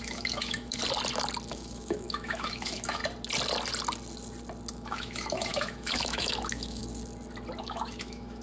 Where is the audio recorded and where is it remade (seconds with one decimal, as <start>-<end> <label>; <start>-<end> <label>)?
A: 0.0-0.8 remade; 0.8-1.5 recorded; 1.5-3.0 remade; 3.0-4.7 recorded; 4.7-6.8 remade; 6.8-7.6 recorded; 7.6-8.4 remade